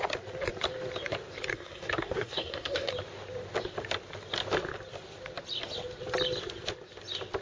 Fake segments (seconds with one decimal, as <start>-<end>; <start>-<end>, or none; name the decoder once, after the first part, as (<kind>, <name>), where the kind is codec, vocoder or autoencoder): 1.5-2.9 (codec, SNAC)